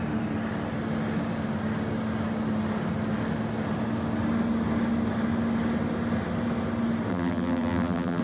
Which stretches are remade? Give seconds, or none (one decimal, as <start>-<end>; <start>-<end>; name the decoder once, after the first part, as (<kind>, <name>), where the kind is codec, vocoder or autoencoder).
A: 7.1-8.2 (vocoder, BigVGAN v2)